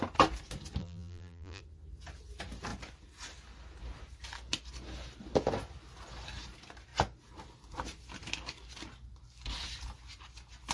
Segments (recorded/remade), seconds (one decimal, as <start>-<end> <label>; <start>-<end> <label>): 0.0-0.8 recorded; 0.8-1.6 remade; 1.6-10.7 recorded